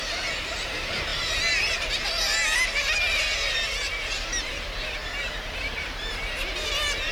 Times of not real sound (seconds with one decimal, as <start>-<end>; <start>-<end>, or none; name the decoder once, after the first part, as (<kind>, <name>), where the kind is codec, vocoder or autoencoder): 0.0-5.0 (vocoder, BigVGAN v2); 5.6-7.1